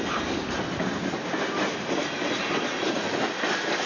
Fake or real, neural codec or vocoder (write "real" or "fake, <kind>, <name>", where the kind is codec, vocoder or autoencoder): real